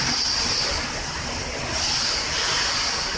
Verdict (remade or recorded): recorded